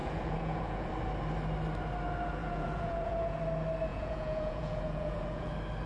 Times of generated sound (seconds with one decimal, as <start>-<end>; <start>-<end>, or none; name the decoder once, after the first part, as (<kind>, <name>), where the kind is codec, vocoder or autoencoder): 0.0-0.9 (vocoder, Vocos); 2.4-3.4; 3.9-5.5